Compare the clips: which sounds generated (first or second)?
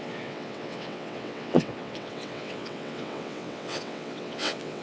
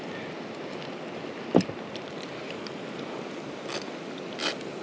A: first